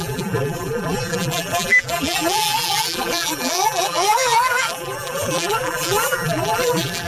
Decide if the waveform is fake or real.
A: fake